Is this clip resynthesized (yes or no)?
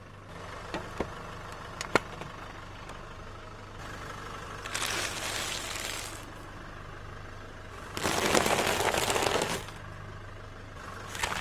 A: no